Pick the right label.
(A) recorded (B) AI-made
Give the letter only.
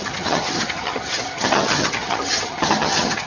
B